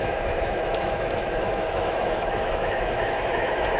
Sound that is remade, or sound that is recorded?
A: remade